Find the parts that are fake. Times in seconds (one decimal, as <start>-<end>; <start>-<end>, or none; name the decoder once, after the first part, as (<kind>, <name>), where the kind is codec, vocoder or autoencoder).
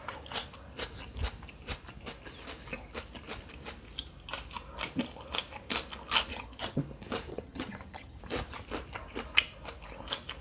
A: 6.3-6.8 (vocoder, HiFi-GAN); 7.3-8.2